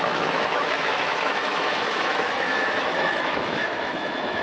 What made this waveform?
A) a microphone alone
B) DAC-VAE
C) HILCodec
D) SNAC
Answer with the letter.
B